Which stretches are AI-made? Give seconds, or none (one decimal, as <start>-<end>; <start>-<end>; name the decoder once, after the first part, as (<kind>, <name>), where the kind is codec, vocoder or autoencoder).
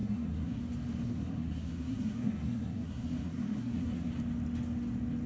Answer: 0.0-0.6 (codec, SNAC); 1.1-4.1